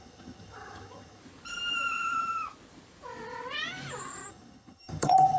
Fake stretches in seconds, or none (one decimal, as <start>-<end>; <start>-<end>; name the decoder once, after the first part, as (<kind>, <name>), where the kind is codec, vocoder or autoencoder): 0.0-1.2 (vocoder, HiFi-GAN); 4.3-5.4